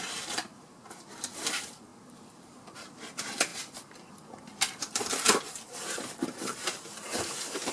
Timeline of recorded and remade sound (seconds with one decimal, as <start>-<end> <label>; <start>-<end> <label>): 0.0-7.7 remade

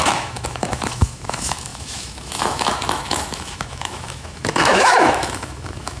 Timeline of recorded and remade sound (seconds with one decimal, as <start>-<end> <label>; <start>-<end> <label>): 0.0-6.0 remade

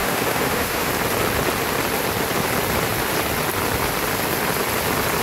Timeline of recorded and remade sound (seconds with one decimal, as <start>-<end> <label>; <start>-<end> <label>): 0.0-0.9 remade; 0.9-5.2 recorded

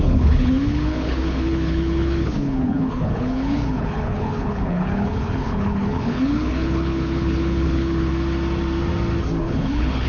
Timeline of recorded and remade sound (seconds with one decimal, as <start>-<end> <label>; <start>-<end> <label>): 0.0-8.1 remade; 8.1-9.4 recorded; 9.4-10.1 remade

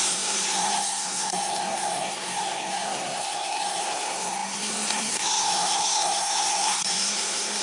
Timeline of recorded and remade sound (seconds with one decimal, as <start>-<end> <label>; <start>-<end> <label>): 0.0-7.6 remade

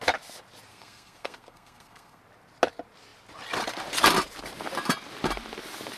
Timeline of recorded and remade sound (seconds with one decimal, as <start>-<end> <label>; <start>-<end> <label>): 0.0-0.7 recorded; 0.7-2.2 remade; 2.2-6.0 recorded

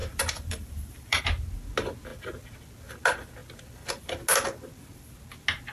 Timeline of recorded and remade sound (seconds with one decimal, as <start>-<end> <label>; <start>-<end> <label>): 0.0-1.2 remade; 1.2-5.7 recorded